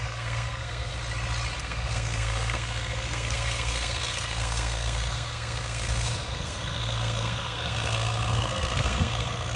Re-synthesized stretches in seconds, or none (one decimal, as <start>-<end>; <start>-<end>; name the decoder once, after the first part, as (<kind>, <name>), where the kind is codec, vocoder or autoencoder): 0.0-0.9 (codec, SNAC); 1.6-9.6